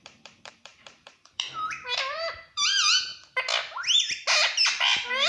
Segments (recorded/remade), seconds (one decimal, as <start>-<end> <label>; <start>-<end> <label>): 0.0-3.1 remade; 3.1-4.6 recorded; 4.6-5.3 remade